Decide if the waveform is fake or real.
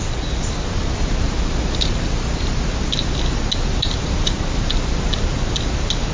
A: real